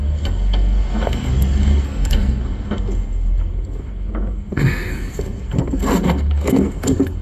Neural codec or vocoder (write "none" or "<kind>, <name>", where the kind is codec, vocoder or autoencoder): codec, SNAC